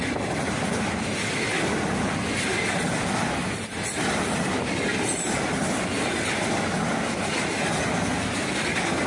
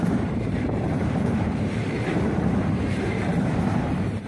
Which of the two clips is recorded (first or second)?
first